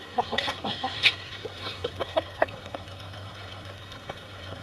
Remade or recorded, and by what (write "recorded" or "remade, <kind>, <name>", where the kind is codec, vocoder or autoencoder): remade, codec, SNAC